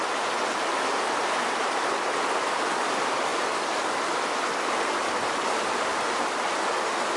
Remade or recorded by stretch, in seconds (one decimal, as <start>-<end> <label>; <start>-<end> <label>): 0.0-7.2 recorded